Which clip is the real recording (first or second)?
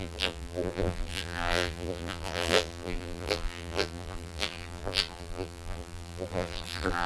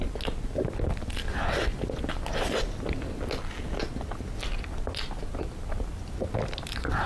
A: second